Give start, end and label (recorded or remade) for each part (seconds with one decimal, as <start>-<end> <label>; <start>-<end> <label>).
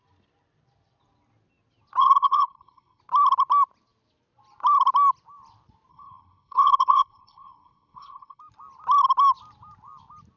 0.0-2.0 recorded; 2.0-3.0 remade; 3.0-5.9 recorded; 5.9-8.4 remade; 8.4-10.4 recorded